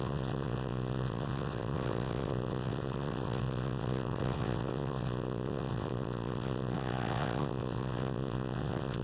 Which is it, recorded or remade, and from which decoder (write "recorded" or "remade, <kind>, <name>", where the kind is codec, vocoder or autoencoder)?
remade, vocoder, WaveNeXt